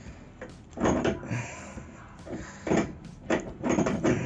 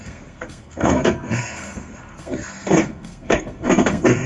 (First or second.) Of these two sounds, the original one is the first